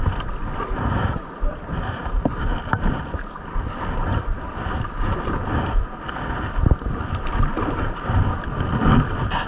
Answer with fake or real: real